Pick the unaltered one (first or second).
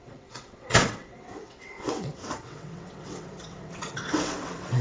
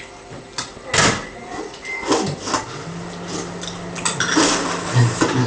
second